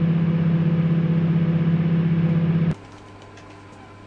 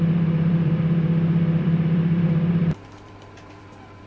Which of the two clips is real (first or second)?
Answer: first